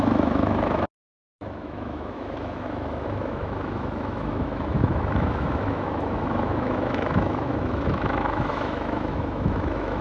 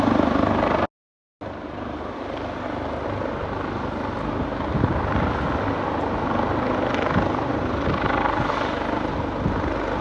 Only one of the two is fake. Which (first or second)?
first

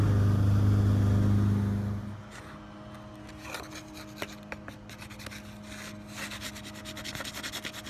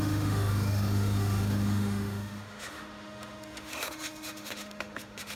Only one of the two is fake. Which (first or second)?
second